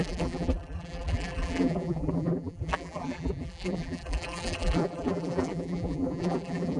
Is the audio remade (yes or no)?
yes